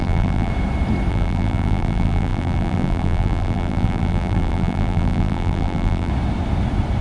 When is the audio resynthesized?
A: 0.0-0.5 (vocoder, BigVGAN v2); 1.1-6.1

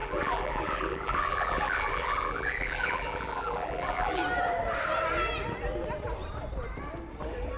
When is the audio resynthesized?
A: 0.0-4.2 (vocoder, BigVGAN v2)

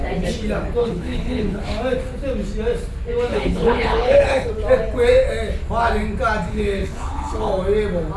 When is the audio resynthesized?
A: 0.8-1.6 (codec, HILCodec); 3.3-4.5; 6.5-7.5